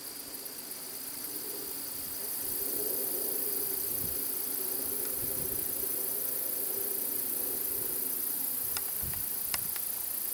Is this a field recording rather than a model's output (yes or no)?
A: yes